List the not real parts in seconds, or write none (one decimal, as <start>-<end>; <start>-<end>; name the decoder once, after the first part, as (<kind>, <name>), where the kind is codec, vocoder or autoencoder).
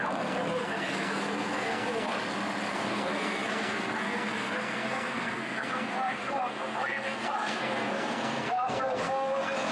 0.0-2.1 (codec, SNAC); 2.7-9.7